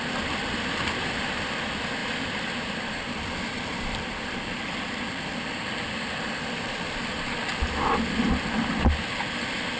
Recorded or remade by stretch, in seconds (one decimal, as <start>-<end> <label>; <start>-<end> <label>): 0.0-2.0 recorded; 2.0-6.4 remade; 6.4-9.8 recorded